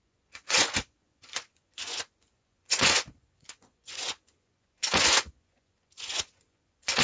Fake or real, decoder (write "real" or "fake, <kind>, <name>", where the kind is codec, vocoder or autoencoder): fake, vocoder, Vocos